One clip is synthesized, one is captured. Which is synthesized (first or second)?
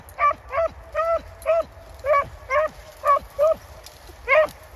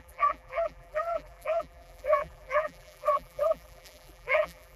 second